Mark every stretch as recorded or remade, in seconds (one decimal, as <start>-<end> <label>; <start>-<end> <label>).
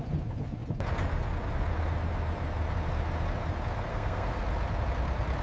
0.0-3.9 recorded; 3.9-4.4 remade; 4.4-5.4 recorded